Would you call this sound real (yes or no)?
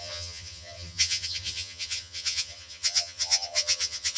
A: no